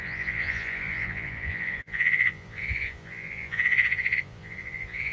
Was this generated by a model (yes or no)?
yes